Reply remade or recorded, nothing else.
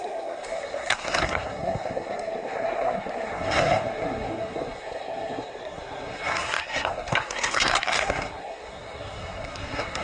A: remade